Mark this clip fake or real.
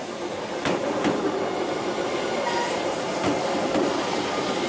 fake